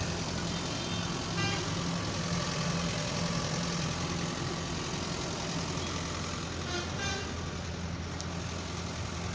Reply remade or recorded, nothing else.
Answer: recorded